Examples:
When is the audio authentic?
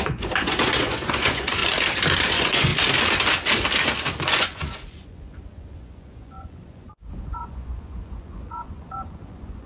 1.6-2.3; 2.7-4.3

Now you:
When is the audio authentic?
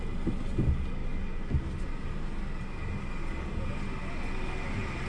0.0-5.1